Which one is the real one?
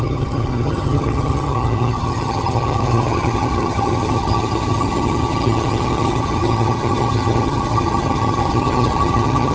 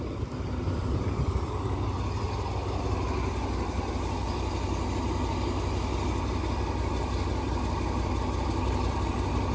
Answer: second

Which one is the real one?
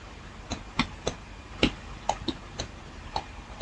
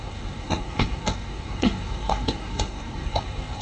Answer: first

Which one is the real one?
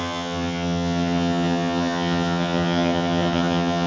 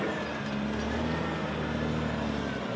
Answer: second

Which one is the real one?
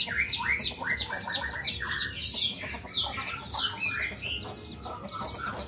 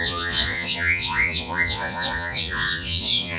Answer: first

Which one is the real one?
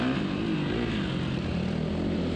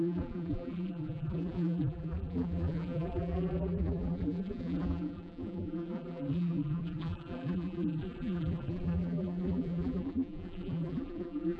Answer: first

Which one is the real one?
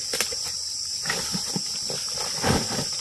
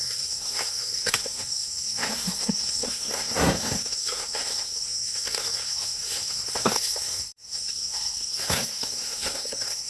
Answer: first